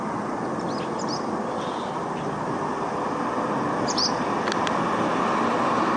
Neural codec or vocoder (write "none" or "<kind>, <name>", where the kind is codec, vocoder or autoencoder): none